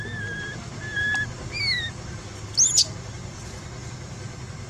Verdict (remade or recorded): recorded